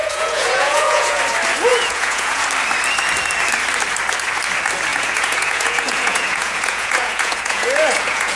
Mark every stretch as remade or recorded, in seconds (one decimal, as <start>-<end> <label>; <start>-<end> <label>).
0.0-1.2 remade; 1.2-1.7 recorded; 1.7-2.4 remade; 2.4-4.9 recorded; 4.9-8.4 remade